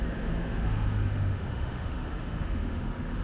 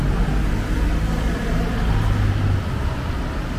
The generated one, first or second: first